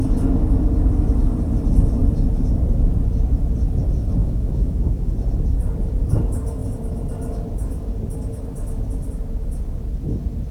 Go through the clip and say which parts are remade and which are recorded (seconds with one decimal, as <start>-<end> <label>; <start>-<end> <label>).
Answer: 0.0-4.2 recorded; 4.2-5.1 remade; 5.1-10.5 recorded